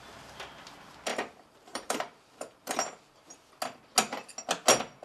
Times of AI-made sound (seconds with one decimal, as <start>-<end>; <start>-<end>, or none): 1.1-3.5